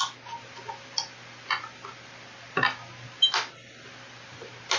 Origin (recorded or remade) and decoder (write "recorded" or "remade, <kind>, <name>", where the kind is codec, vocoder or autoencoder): recorded